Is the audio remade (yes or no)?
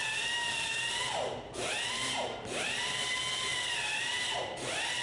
no